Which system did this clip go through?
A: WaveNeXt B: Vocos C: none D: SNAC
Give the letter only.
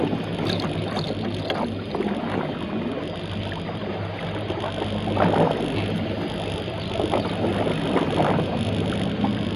C